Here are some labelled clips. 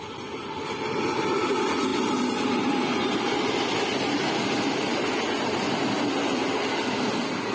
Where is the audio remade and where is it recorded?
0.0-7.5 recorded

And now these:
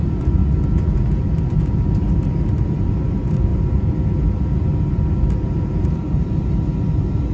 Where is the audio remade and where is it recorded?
0.0-0.4 remade; 0.4-1.6 recorded; 1.6-3.5 remade; 3.5-5.4 recorded; 5.4-7.3 remade

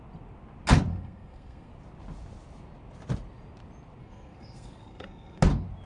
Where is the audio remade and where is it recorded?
0.0-0.9 recorded; 0.9-1.7 remade; 1.7-4.0 recorded; 4.0-5.4 remade; 5.4-5.9 recorded

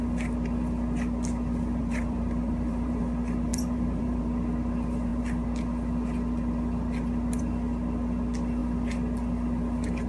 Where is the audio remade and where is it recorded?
0.0-1.8 recorded; 1.8-3.0 remade; 3.0-3.5 recorded; 3.5-4.2 remade; 4.2-10.1 recorded

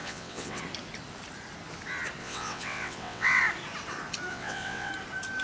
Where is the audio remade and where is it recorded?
0.0-0.6 remade; 0.6-2.2 recorded; 2.2-3.4 remade; 3.4-4.3 recorded; 4.3-4.9 remade; 4.9-5.4 recorded

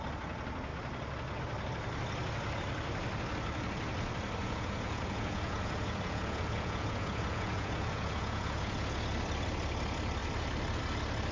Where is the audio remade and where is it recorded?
0.0-4.4 recorded; 4.4-9.0 remade; 9.0-11.3 recorded